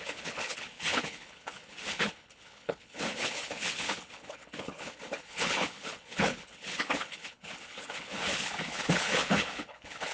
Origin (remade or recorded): remade